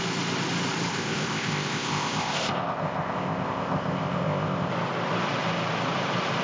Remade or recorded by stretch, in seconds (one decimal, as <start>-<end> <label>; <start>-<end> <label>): 0.0-0.9 recorded; 0.9-4.7 remade; 4.7-6.4 recorded